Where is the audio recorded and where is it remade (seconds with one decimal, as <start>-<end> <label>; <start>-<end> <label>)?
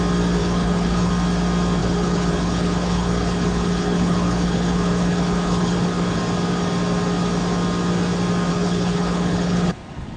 0.0-0.4 recorded; 0.4-1.1 remade; 1.1-1.8 recorded; 1.8-6.2 remade; 6.2-8.5 recorded; 8.5-10.2 remade